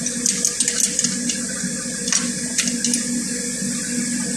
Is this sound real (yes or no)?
yes